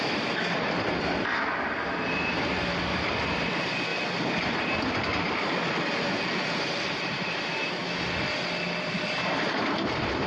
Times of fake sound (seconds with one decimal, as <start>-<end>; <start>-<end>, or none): 0.0-3.9; 6.2-7.8; 8.4-10.3